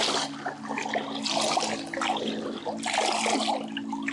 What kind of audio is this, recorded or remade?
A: recorded